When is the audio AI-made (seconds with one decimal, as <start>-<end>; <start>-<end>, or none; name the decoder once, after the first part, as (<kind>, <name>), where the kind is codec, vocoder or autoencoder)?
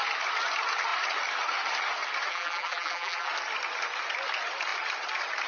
2.3-3.3 (vocoder, BigVGAN v2)